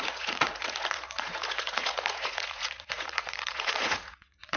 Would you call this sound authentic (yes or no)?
no